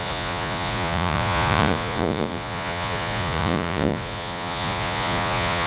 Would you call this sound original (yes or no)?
no